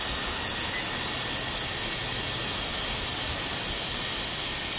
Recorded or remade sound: recorded